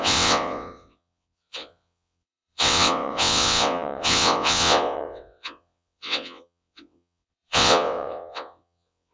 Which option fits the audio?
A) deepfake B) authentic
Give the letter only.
A